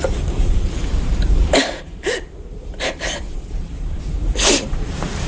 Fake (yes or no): yes